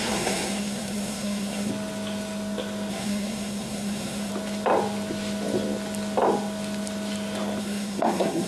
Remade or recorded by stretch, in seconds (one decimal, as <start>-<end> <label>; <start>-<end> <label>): 0.0-1.7 remade; 1.7-2.9 recorded; 2.9-4.3 remade; 4.3-7.6 recorded; 7.6-8.5 remade